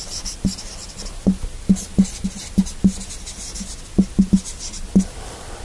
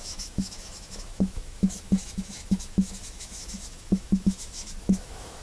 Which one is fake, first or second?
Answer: second